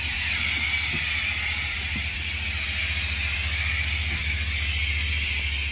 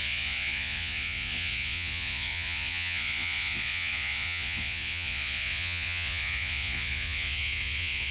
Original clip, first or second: first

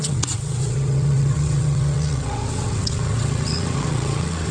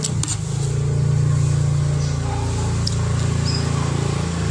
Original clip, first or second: second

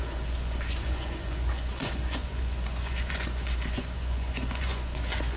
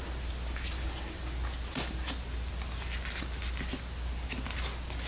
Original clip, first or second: second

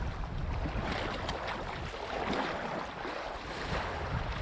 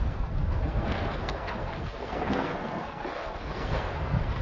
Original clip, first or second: first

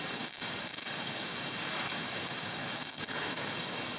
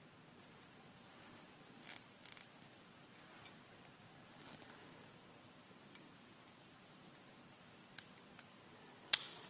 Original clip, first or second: second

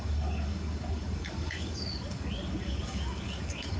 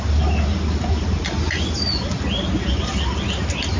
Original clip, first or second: second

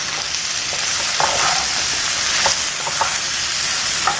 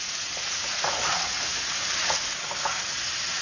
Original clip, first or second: first